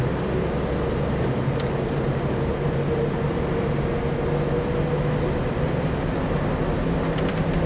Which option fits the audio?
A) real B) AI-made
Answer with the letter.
A